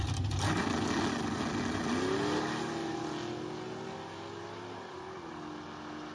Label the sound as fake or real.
real